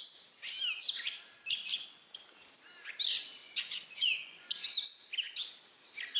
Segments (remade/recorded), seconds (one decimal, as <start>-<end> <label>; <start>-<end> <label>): 0.0-1.7 recorded; 1.7-2.2 remade; 2.2-3.4 recorded; 3.4-4.5 remade; 4.5-6.2 recorded